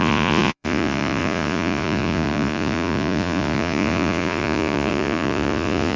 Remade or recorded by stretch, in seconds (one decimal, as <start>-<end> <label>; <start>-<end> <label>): 0.0-6.0 remade